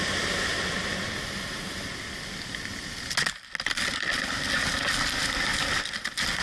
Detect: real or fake real